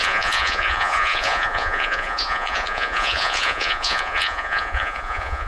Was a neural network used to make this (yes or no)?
yes